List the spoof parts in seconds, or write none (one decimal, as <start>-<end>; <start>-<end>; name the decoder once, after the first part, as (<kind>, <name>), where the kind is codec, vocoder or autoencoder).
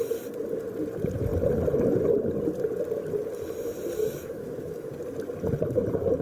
4.0-4.9 (autoencoder, DAC-VAE)